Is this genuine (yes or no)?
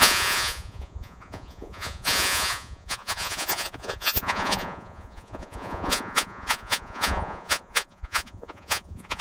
no